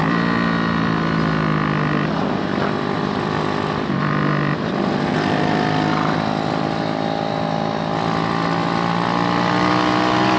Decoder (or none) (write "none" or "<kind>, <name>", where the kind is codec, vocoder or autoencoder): none